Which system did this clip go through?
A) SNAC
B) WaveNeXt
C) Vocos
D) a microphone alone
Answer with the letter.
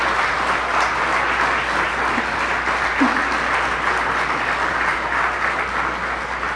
D